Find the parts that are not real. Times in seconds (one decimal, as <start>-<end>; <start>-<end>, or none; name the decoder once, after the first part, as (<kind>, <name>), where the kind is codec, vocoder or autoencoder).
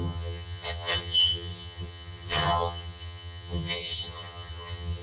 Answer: 0.0-5.0 (vocoder, HiFi-GAN)